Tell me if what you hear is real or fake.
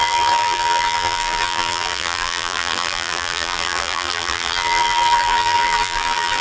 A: fake